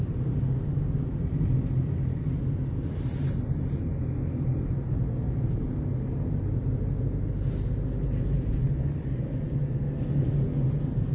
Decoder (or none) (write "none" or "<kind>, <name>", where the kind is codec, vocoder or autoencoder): none